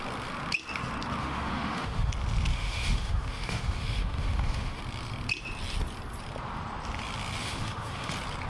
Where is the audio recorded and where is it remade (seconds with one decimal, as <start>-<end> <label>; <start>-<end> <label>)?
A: 0.0-1.2 recorded; 1.2-2.1 remade; 2.1-2.5 recorded; 2.5-4.8 remade; 4.8-7.4 recorded; 7.4-8.1 remade; 8.1-8.5 recorded